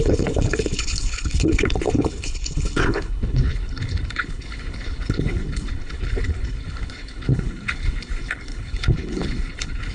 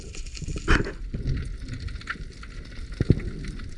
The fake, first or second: first